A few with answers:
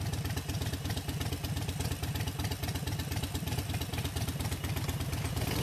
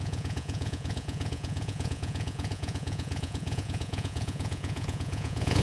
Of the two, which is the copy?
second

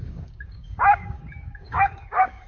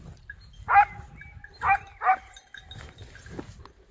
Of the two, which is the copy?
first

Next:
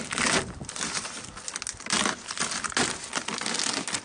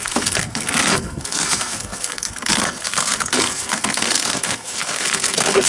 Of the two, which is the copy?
second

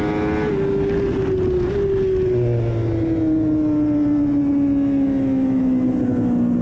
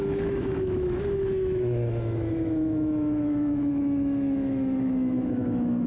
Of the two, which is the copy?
second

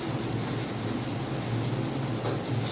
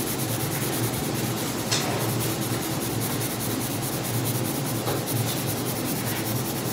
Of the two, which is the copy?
second